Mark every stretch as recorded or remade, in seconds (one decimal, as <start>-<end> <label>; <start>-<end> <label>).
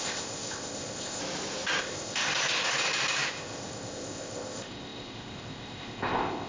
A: 0.0-1.2 remade; 1.2-1.8 recorded; 1.8-2.3 remade; 2.3-3.3 recorded; 3.3-6.5 remade